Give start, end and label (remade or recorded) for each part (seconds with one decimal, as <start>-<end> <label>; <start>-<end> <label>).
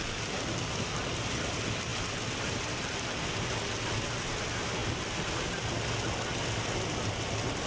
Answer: 0.0-7.7 recorded